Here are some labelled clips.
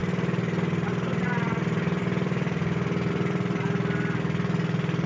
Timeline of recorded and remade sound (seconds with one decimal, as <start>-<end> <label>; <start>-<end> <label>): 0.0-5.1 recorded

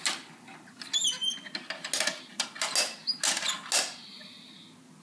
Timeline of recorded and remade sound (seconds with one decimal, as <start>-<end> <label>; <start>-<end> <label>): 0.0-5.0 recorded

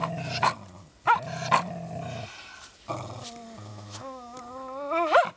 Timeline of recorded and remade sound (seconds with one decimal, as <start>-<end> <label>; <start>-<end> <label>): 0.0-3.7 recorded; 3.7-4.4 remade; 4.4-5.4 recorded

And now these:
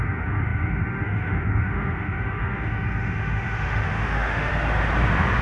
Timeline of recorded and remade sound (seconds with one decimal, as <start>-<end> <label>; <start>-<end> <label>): 0.0-4.5 remade; 4.5-5.4 recorded

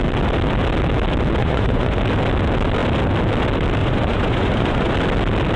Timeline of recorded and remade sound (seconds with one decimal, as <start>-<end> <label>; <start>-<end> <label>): 0.0-1.4 recorded; 1.4-2.0 remade; 2.0-3.8 recorded; 3.8-4.9 remade; 4.9-5.6 recorded